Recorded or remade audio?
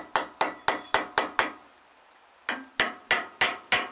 recorded